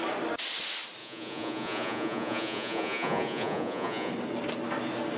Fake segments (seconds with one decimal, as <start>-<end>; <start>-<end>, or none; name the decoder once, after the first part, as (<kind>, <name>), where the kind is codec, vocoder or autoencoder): 1.0-4.1 (vocoder, Vocos)